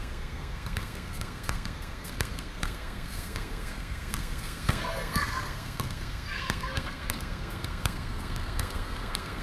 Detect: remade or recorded remade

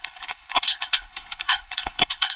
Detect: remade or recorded remade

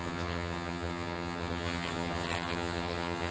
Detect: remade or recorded remade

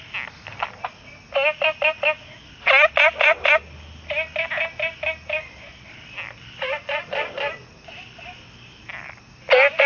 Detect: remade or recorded recorded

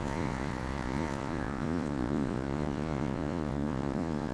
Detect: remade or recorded remade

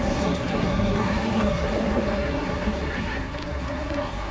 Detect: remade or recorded remade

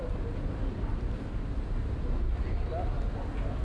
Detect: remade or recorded recorded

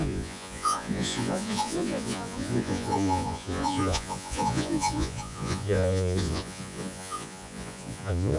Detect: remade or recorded remade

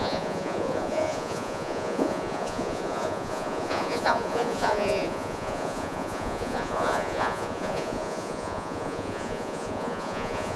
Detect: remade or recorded remade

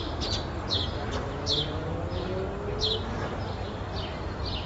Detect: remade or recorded recorded